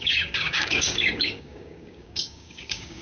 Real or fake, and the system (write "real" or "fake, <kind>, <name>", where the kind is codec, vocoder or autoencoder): fake, codec, DAC